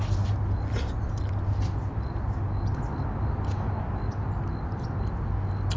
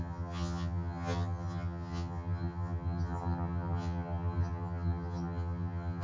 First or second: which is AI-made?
second